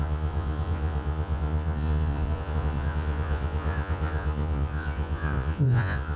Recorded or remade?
remade